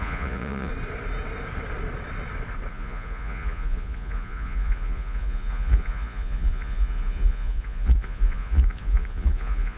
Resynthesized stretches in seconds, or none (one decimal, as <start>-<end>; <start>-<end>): 0.0-0.7; 2.7-9.8